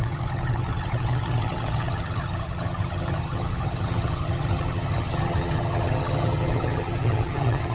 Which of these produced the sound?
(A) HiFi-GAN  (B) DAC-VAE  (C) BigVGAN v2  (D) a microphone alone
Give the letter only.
A